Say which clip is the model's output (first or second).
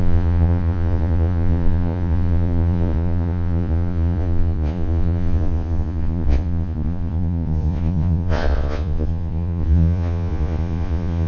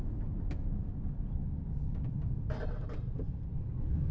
first